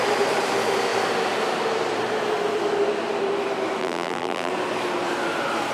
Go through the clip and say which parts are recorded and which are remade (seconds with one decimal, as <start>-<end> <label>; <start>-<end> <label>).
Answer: 0.0-3.8 recorded; 3.8-4.5 remade; 4.5-5.7 recorded

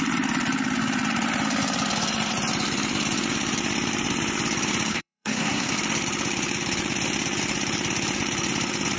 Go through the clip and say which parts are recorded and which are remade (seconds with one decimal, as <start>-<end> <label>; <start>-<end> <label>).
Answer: 0.0-4.9 recorded; 4.9-5.7 remade; 5.7-9.0 recorded

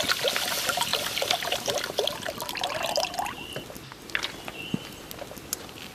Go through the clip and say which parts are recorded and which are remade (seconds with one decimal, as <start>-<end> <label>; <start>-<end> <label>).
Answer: 0.0-5.9 recorded

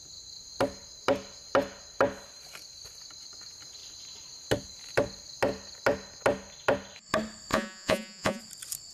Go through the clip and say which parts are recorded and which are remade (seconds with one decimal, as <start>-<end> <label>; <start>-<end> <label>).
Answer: 0.0-7.5 recorded; 7.5-8.4 remade; 8.4-8.9 recorded